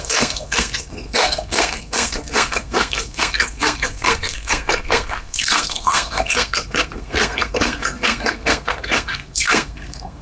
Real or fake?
fake